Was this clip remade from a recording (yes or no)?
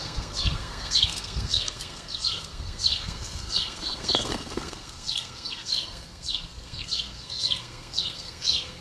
yes